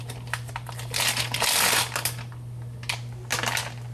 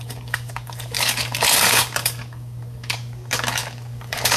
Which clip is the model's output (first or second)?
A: second